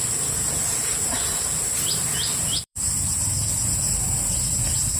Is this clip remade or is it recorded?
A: remade